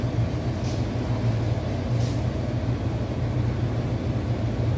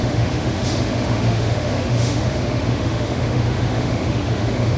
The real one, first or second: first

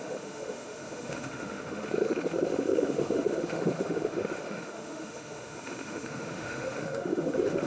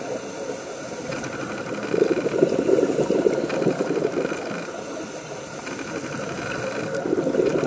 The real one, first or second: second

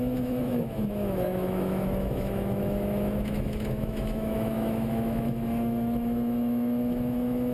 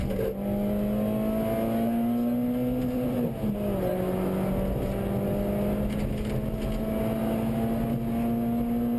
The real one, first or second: second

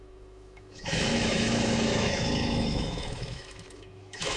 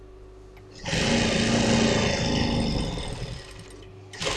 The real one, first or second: second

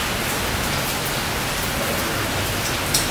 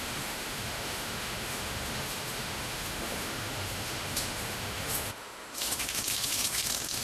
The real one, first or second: first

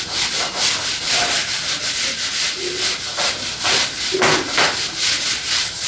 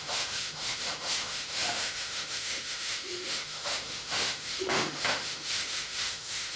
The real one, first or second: first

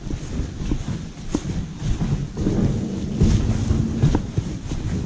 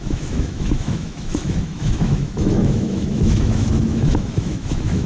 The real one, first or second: first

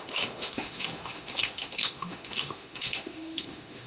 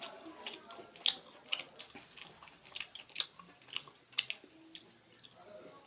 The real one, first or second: second